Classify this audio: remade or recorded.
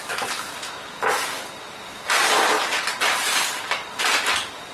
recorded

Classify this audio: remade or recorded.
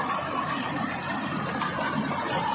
recorded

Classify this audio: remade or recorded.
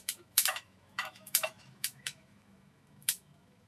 remade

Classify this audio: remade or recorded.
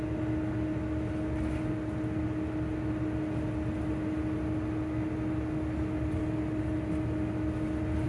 recorded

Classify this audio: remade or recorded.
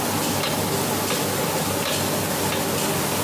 recorded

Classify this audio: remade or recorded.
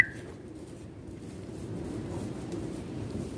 recorded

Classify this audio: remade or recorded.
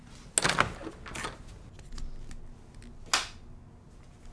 recorded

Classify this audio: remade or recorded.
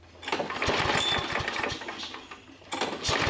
recorded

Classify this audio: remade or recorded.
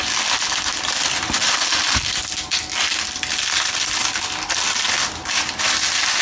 recorded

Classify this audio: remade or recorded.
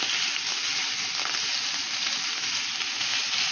recorded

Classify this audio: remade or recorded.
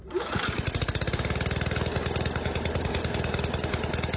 recorded